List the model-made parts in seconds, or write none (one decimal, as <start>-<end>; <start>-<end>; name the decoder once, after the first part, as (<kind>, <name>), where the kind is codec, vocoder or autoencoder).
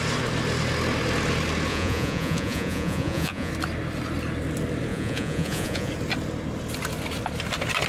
1.7-3.5 (vocoder, Vocos); 4.9-5.9